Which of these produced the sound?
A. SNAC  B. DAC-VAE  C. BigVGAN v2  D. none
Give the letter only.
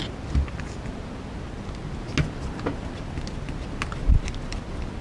D